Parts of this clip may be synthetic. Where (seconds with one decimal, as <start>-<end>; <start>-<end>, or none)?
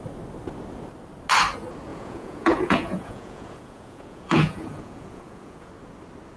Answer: 1.9-5.7